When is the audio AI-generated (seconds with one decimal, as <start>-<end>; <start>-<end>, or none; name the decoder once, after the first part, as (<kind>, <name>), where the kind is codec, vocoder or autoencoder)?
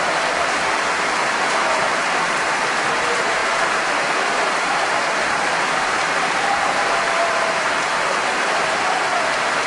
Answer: 0.0-9.7 (vocoder, BigVGAN v2)